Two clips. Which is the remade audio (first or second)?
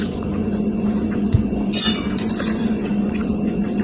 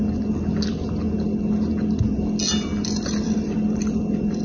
first